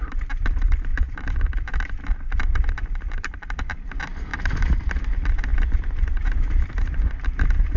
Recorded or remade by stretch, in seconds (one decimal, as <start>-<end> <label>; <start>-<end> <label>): 0.0-0.9 remade; 0.9-2.7 recorded; 2.7-7.8 remade